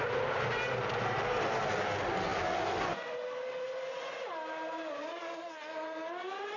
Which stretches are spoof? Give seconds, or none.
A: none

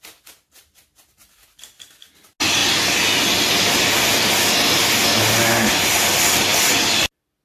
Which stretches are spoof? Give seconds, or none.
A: none